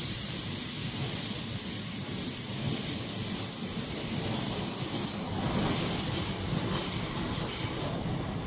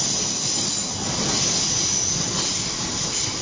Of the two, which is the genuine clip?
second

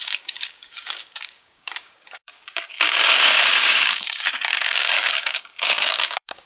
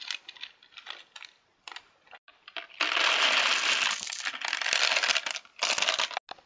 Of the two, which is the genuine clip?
second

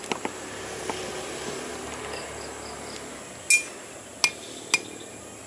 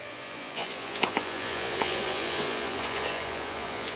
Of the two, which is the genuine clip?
first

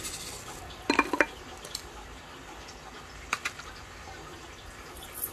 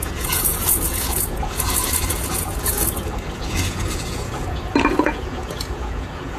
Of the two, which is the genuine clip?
first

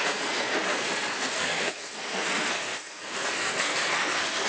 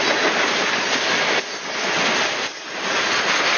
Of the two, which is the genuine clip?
second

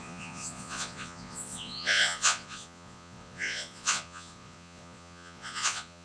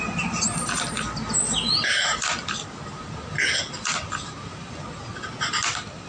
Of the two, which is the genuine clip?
second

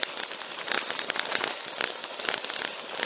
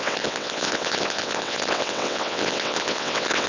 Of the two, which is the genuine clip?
first